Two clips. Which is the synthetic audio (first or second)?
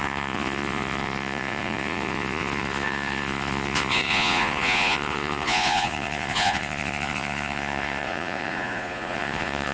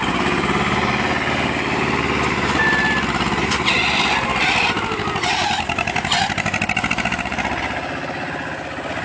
first